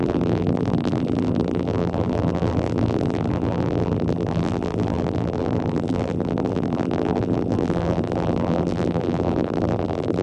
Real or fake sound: fake